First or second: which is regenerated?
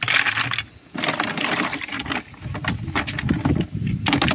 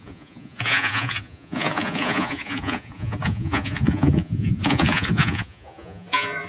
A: second